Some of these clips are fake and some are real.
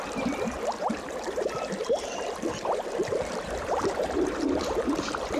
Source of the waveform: fake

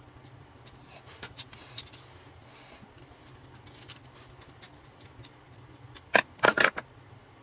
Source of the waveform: real